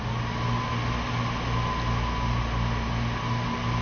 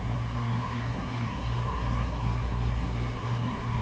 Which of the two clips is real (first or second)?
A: first